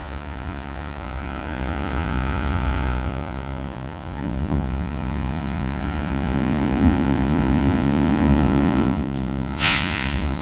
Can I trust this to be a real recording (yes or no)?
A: no